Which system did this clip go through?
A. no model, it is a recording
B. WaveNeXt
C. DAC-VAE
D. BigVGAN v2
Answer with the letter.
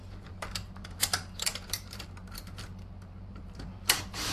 D